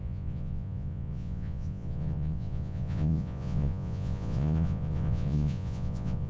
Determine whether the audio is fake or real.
fake